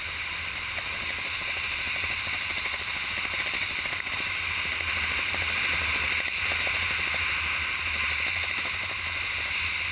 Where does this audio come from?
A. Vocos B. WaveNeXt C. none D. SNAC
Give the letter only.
C